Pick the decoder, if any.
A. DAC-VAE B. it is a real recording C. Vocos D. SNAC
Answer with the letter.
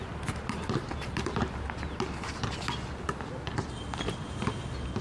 B